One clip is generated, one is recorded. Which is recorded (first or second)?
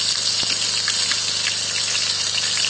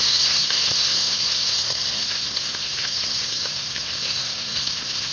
first